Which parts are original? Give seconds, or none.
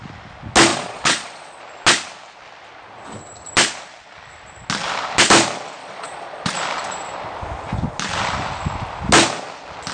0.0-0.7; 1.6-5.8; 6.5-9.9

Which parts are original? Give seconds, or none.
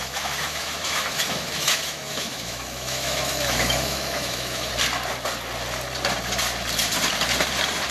4.7-7.9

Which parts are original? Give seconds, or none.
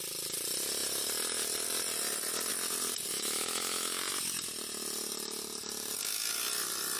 0.0-3.1; 4.0-7.0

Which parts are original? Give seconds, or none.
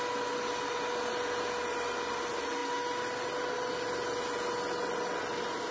0.0-5.7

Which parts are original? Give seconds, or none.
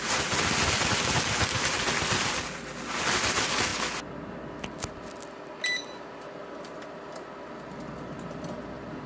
0.0-9.1